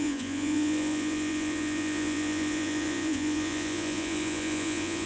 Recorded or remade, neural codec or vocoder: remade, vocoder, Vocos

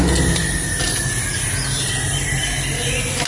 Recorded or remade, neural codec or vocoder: recorded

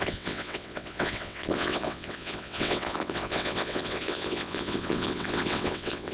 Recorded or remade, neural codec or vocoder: remade, vocoder, WaveNeXt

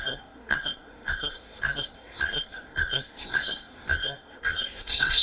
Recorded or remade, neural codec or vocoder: remade, codec, SNAC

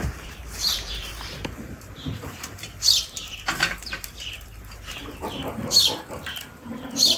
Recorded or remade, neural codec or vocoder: remade, vocoder, BigVGAN v2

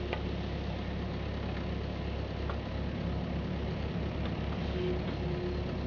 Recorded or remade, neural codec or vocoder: recorded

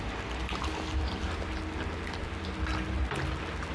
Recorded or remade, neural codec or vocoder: recorded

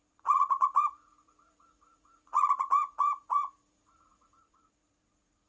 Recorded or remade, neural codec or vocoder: remade, vocoder, Vocos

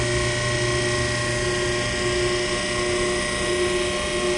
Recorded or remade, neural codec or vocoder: recorded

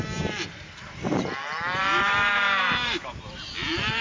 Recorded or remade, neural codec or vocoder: remade, vocoder, BigVGAN v2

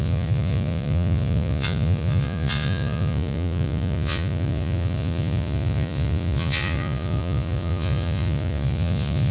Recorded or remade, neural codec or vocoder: remade, vocoder, Vocos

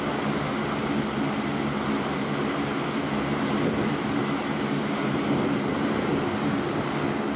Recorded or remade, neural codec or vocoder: recorded